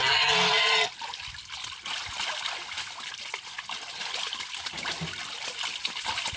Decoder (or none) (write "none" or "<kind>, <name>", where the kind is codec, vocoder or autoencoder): none